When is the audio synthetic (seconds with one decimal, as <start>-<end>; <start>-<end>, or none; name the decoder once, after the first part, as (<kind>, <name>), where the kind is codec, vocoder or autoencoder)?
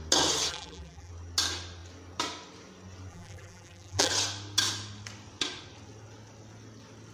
0.5-1.1 (vocoder, BigVGAN v2); 3.1-4.1